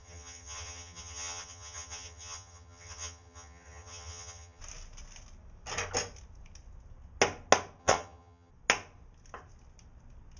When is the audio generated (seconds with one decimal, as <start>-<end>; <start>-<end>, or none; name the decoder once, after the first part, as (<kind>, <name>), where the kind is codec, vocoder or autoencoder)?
0.0-4.6 (vocoder, HiFi-GAN); 7.8-8.5

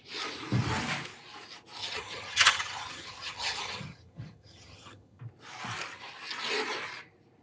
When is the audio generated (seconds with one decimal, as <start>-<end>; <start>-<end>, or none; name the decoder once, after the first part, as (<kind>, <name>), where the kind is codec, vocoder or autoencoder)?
1.8-5.2 (vocoder, HiFi-GAN)

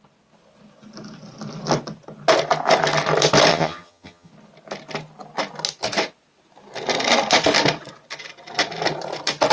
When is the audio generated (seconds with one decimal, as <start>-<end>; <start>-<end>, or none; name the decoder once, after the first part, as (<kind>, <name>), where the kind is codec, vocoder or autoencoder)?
3.5-4.3 (vocoder, HiFi-GAN)

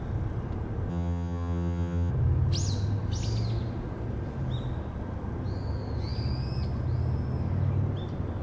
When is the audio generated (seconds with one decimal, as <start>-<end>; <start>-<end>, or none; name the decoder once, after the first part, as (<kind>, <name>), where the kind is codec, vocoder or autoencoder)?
0.9-2.1 (vocoder, HiFi-GAN)

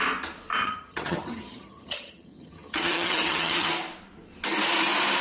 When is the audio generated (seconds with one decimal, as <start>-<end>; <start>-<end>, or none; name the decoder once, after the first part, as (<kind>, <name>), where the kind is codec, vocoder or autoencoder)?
0.6-3.7 (vocoder, HiFi-GAN)

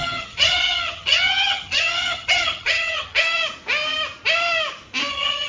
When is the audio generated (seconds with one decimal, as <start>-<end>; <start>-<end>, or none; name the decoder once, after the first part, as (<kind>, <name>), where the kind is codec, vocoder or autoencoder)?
0.0-3.2 (vocoder, HiFi-GAN); 5.1-5.5

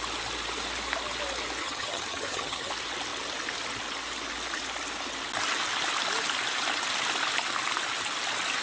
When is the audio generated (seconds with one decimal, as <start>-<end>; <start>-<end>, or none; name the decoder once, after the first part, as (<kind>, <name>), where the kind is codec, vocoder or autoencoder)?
1.6-2.7 (vocoder, HiFi-GAN)